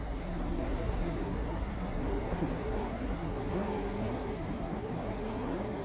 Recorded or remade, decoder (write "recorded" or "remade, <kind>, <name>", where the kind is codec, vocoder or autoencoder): remade, codec, SNAC